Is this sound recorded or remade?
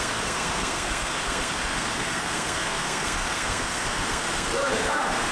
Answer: remade